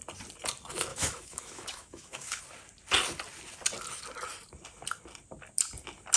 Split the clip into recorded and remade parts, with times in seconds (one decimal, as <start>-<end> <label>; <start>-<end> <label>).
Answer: 0.0-0.9 recorded; 0.9-2.4 remade; 2.4-6.2 recorded

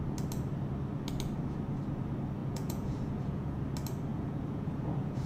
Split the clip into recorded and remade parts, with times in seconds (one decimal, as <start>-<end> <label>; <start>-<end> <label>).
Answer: 0.0-2.4 recorded; 2.4-3.6 remade; 3.6-4.1 recorded; 4.1-5.3 remade

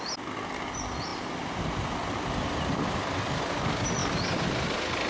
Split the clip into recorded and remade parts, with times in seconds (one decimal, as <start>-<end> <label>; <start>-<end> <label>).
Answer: 0.0-5.1 recorded

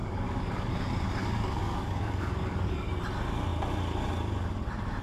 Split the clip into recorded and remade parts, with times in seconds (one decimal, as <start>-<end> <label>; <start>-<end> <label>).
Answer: 0.0-0.7 remade; 0.7-1.2 recorded; 1.2-2.9 remade; 2.9-5.0 recorded

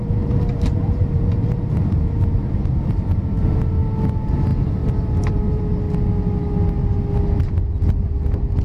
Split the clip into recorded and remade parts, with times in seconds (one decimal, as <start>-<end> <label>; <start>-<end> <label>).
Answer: 0.0-3.0 remade; 3.0-4.5 recorded; 4.5-5.6 remade; 5.6-8.6 recorded

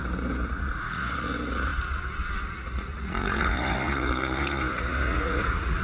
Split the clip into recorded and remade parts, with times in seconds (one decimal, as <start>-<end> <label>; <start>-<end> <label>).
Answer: 0.0-5.8 remade